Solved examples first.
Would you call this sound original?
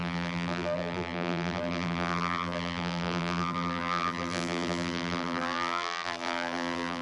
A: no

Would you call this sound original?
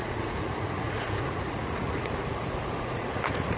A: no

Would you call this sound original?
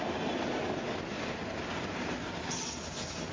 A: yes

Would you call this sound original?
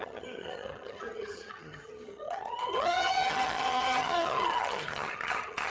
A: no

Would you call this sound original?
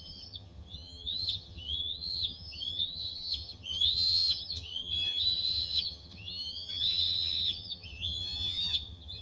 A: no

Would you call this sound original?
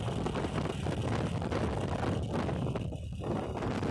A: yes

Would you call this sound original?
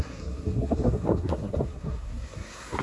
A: no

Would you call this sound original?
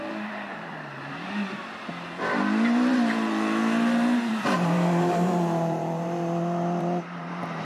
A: no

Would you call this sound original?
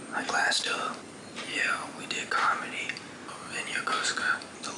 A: yes